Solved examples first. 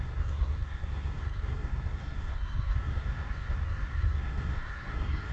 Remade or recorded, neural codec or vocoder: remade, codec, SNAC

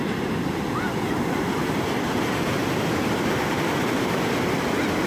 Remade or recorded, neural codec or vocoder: recorded